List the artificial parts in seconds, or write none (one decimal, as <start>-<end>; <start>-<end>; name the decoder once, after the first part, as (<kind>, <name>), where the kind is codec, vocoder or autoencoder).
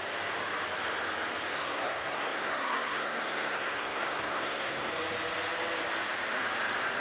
1.5-4.9 (codec, SNAC)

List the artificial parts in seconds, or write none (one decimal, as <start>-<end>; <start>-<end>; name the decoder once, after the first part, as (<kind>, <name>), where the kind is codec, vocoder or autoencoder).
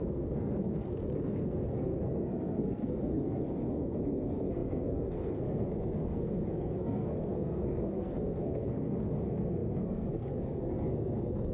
0.0-11.5 (codec, SNAC)